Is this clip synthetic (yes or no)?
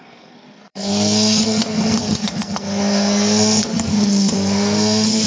yes